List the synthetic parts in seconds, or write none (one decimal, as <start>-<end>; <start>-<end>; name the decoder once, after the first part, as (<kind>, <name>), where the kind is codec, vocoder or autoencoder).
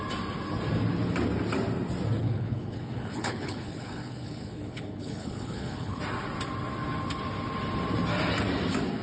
2.2-6.0 (codec, HILCodec)